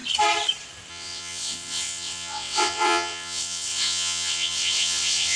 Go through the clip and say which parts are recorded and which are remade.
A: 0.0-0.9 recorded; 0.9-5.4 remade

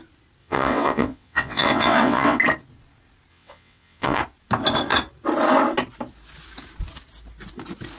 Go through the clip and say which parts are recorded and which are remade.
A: 0.0-0.4 recorded; 0.4-2.4 remade; 2.4-3.3 recorded; 3.3-4.2 remade; 4.2-8.0 recorded

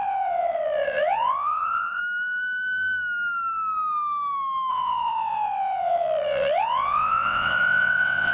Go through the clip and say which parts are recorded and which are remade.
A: 0.0-2.0 remade; 2.0-4.7 recorded; 4.7-8.3 remade

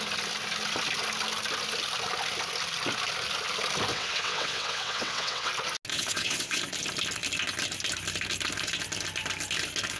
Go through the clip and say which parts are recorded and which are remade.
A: 0.0-3.9 recorded; 3.9-5.5 remade; 5.5-5.9 recorded; 5.9-6.6 remade; 6.6-10.0 recorded

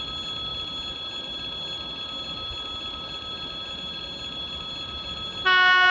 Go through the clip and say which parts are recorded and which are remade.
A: 0.0-5.9 recorded